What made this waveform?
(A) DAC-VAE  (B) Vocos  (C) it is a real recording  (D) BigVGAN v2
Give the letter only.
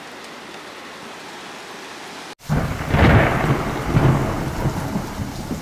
C